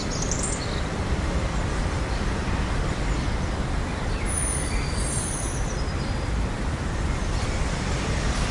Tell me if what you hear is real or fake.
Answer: fake